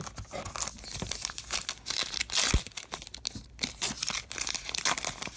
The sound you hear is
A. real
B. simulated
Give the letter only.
A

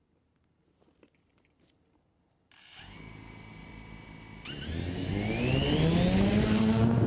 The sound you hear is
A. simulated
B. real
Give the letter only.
B